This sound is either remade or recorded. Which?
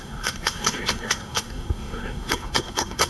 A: remade